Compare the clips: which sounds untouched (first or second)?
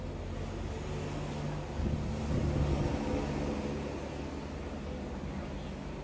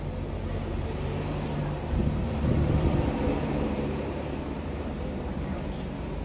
first